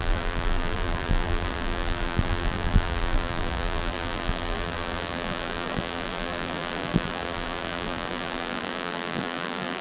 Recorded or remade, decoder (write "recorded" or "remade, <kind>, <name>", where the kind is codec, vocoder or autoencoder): remade, vocoder, BigVGAN v2